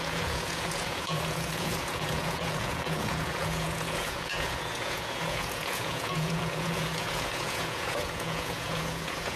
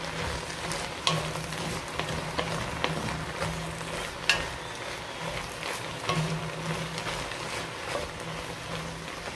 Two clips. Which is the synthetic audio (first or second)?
first